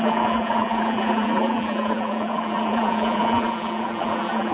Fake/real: fake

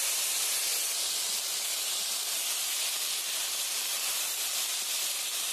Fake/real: real